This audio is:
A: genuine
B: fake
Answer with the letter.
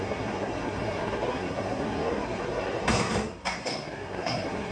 B